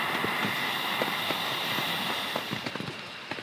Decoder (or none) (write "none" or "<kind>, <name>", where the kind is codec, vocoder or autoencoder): none